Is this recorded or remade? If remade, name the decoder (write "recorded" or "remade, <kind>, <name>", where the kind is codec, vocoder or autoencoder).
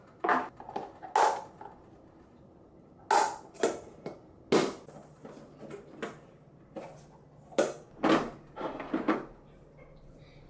recorded